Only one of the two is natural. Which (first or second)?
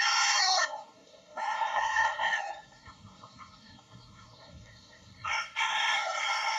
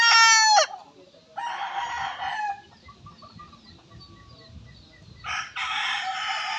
second